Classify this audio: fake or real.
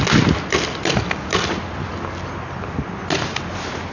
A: real